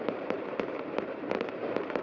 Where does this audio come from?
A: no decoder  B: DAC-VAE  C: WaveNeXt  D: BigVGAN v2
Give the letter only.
D